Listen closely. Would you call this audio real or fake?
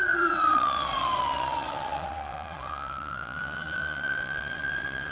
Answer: fake